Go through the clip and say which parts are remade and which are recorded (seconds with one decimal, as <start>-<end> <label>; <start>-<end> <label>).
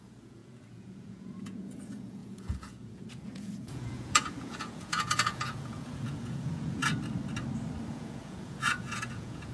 0.0-6.8 remade; 6.8-7.9 recorded; 7.9-9.5 remade